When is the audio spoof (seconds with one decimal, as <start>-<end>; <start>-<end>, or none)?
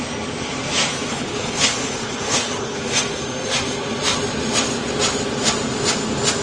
1.1-2.8